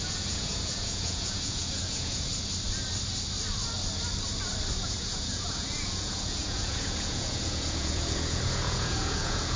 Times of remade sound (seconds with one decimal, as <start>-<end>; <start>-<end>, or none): 0.0-2.3; 4.8-9.6